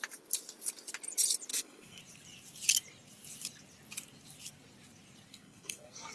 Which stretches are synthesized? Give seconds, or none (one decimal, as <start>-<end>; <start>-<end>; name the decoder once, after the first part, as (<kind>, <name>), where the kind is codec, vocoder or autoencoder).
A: 1.5-2.0 (codec, SNAC); 5.3-6.1